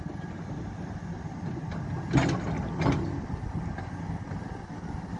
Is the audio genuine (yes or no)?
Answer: yes